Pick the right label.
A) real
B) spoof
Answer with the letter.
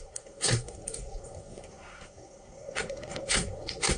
B